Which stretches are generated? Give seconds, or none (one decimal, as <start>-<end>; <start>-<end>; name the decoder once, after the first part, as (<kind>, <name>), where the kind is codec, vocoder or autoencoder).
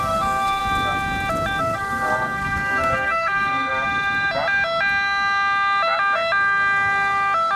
0.0-0.6 (codec, SNAC); 1.6-3.7